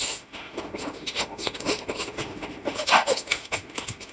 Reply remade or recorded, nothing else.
remade